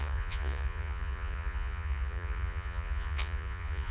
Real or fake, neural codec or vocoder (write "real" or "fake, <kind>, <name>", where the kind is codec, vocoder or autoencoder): fake, vocoder, Vocos